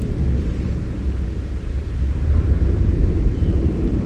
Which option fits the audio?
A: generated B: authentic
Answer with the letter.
A